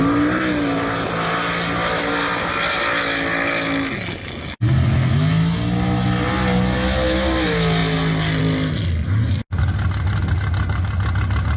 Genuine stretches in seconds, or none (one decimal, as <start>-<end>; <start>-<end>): 0.0-11.6